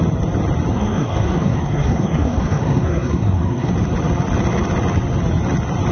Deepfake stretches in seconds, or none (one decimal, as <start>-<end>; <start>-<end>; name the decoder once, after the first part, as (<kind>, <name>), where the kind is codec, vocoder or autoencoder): 0.7-3.7 (codec, SNAC)

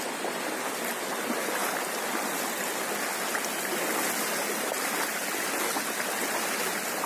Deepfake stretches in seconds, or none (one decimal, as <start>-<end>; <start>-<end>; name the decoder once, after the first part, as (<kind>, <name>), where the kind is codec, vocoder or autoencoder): none